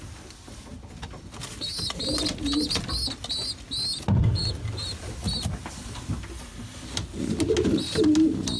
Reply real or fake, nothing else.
real